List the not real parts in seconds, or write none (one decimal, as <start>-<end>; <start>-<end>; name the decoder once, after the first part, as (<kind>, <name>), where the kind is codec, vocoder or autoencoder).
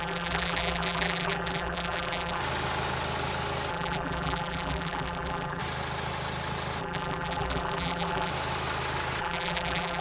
0.0-2.4 (vocoder, BigVGAN v2); 3.7-5.6; 6.8-8.3; 9.2-10.0